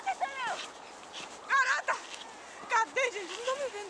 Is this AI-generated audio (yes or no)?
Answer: no